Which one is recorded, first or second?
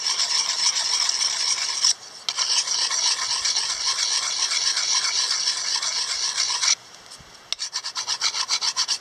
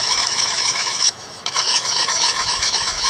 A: first